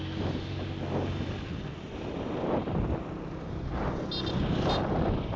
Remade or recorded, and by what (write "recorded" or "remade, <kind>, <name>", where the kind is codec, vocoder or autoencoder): recorded